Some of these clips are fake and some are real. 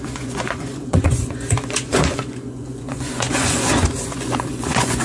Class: fake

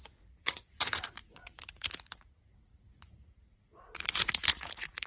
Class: fake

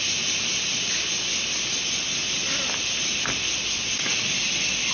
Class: real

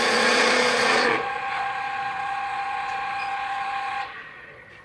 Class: fake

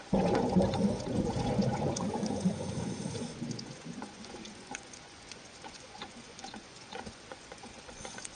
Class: fake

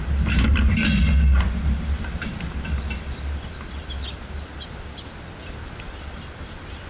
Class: real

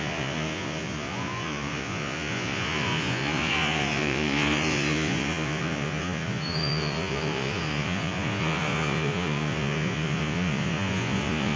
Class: fake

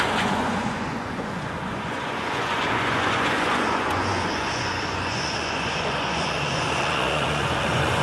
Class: fake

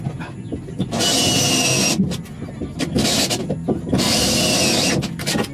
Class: real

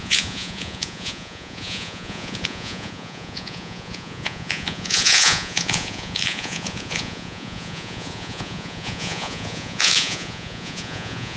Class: fake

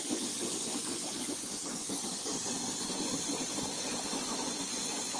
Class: fake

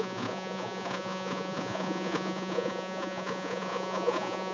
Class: fake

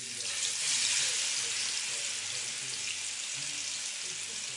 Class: real